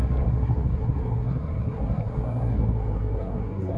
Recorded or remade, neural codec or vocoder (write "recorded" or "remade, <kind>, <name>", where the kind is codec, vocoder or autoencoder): remade, codec, SNAC